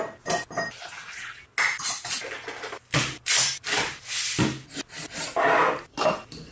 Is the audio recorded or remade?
recorded